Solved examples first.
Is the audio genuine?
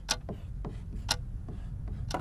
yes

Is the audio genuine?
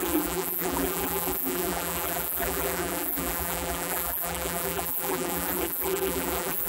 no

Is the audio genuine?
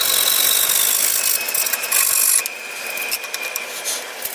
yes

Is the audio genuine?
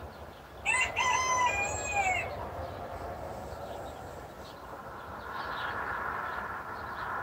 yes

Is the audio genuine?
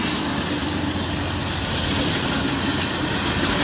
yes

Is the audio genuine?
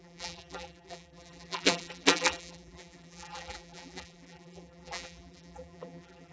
no